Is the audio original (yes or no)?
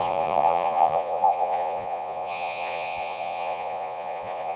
no